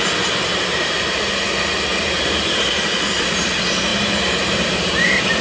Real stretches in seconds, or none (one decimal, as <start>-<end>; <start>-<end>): 0.0-0.5; 1.3-1.9; 3.1-3.9